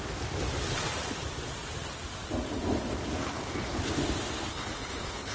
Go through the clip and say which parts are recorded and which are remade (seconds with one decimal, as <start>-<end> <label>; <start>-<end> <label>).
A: 0.0-3.2 recorded; 3.2-3.8 remade; 3.8-4.5 recorded; 4.5-5.3 remade